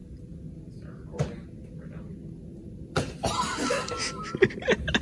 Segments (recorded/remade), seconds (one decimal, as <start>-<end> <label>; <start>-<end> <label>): 0.0-2.5 recorded; 2.5-3.3 remade; 3.3-5.0 recorded